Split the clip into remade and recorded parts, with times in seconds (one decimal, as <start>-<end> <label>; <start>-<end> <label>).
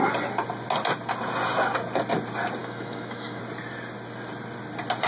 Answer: 0.0-2.6 recorded; 2.6-3.4 remade; 3.4-5.1 recorded